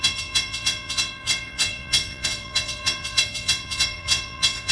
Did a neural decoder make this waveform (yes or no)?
yes